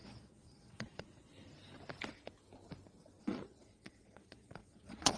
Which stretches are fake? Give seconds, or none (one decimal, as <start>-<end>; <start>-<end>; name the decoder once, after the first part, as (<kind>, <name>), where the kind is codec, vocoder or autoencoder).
0.0-1.3 (vocoder, Vocos); 3.2-5.2